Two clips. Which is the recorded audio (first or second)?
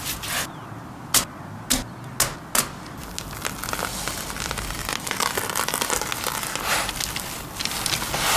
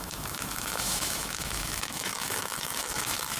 first